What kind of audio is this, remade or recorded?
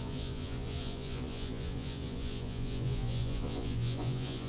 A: remade